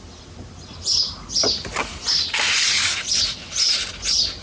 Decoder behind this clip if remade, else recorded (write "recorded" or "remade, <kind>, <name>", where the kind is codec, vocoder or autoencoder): recorded